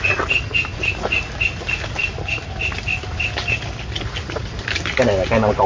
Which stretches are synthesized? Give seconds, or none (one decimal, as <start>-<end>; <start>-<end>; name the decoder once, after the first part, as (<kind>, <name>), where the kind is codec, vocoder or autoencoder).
none